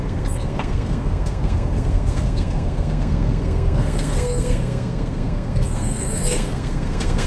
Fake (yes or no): yes